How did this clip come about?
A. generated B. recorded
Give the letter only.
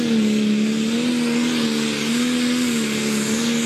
B